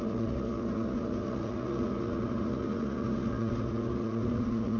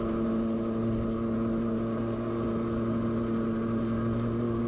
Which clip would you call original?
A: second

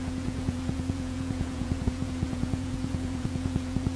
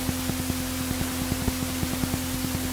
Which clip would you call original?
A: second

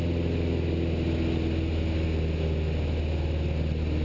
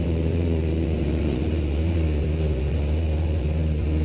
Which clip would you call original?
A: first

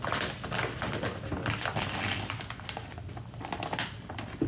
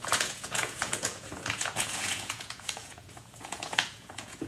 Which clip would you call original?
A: first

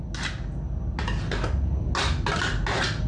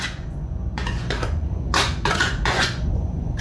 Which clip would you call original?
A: first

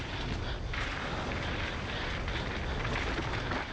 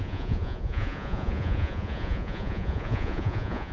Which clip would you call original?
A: first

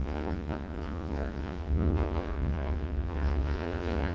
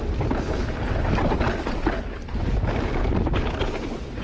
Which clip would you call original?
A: second